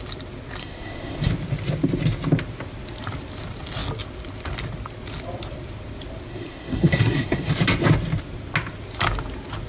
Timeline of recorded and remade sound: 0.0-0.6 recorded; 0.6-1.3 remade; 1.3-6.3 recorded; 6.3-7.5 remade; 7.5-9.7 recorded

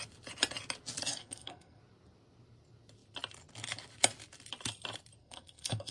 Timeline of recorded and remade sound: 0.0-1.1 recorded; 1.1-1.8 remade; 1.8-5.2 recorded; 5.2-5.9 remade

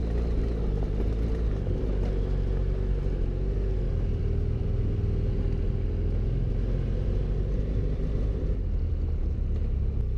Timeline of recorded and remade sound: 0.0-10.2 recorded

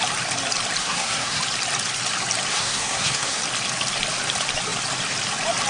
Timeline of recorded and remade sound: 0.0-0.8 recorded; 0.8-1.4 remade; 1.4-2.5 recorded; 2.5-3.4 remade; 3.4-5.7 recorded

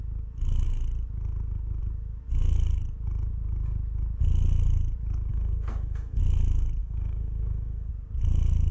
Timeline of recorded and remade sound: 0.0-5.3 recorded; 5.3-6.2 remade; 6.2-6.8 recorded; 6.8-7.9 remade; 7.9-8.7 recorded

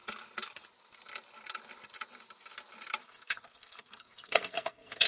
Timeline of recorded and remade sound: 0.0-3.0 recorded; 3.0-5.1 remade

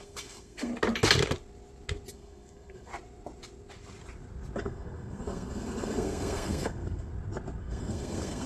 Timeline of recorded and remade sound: 0.0-0.7 remade; 0.7-2.1 recorded; 2.1-2.9 remade; 2.9-4.6 recorded; 4.6-7.1 remade; 7.1-7.6 recorded; 7.6-8.5 remade